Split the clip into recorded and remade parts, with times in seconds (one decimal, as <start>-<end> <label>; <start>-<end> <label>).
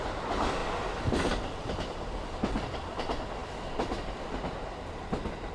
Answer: 0.0-5.5 recorded